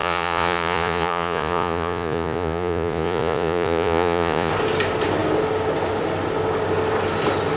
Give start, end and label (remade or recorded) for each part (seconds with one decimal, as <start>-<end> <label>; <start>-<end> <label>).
0.0-4.5 remade; 4.5-7.6 recorded